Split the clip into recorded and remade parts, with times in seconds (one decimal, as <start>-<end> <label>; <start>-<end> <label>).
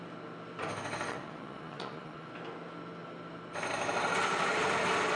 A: 0.0-1.1 recorded; 1.1-2.3 remade; 2.3-5.2 recorded